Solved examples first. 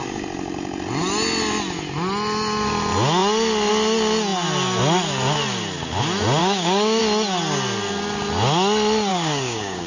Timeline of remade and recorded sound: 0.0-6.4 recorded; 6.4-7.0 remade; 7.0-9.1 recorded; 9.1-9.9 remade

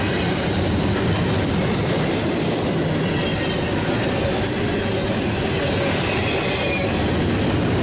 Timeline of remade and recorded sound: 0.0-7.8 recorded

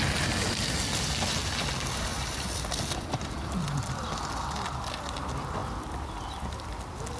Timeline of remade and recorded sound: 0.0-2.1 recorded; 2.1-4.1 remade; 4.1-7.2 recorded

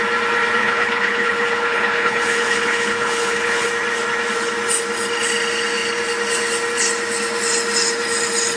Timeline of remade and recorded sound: 0.0-0.6 recorded; 0.6-3.7 remade; 3.7-8.6 recorded

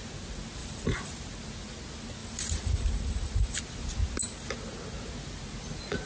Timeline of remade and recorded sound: 0.0-0.6 recorded; 0.6-1.1 remade; 1.1-2.2 recorded; 2.2-3.6 remade; 3.6-6.1 recorded

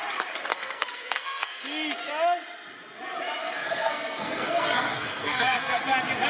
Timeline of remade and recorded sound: 0.0-0.5 recorded; 0.5-1.6 remade; 1.6-3.4 recorded; 3.4-5.8 remade; 5.8-6.3 recorded